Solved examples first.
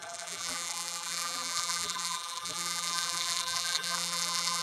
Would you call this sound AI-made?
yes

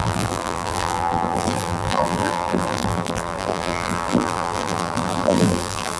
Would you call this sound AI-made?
yes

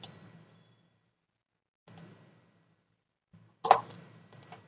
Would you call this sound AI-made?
no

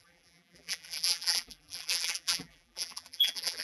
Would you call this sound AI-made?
yes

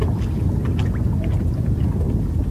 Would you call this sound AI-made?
no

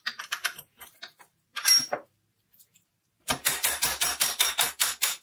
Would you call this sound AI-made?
yes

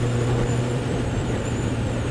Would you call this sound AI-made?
yes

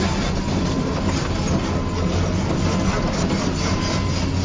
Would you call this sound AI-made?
no